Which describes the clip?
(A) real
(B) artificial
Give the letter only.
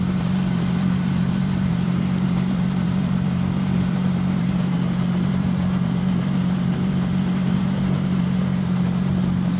B